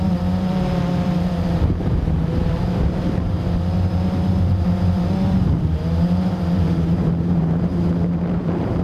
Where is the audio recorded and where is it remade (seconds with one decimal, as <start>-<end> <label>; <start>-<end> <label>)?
0.0-7.7 remade; 7.7-8.3 recorded; 8.3-8.8 remade